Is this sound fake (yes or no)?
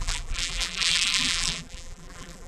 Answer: yes